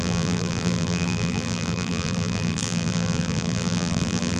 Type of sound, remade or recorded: remade